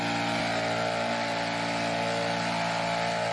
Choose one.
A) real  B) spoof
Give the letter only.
A